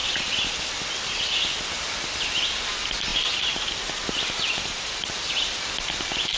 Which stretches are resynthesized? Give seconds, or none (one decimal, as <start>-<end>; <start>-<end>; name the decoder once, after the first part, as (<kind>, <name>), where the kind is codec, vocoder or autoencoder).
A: 3.1-5.1 (vocoder, BigVGAN v2)